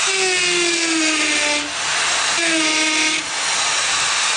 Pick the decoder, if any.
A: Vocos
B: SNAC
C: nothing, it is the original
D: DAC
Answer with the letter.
C